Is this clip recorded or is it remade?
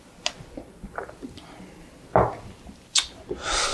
recorded